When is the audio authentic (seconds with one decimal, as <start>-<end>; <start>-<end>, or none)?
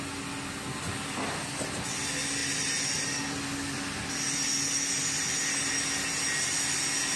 0.0-7.2